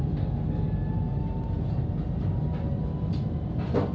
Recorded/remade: recorded